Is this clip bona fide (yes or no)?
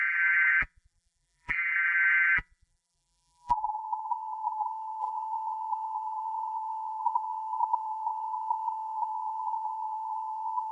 no